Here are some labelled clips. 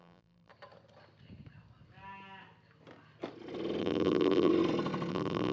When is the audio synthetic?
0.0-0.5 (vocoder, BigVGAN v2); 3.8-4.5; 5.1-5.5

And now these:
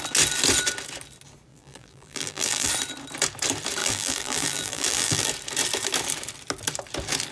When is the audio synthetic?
1.5-2.7 (vocoder, BigVGAN v2); 3.8-5.3

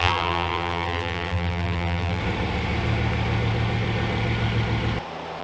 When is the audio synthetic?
0.0-2.2 (vocoder, BigVGAN v2)

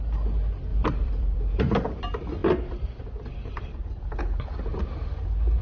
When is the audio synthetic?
0.7-1.6 (vocoder, BigVGAN v2); 2.4-4.2

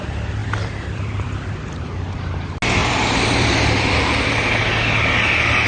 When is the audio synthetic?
0.4-1.7 (vocoder, BigVGAN v2); 2.8-4.0

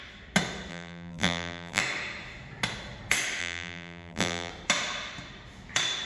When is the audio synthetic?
0.7-1.8 (vocoder, BigVGAN v2); 3.4-4.5

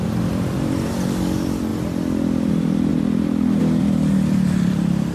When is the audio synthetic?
0.0-1.7 (vocoder, BigVGAN v2); 2.5-2.9; 3.6-5.1